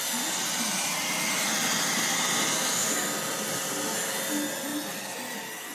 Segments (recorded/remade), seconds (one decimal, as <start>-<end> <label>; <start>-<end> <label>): 0.0-5.7 recorded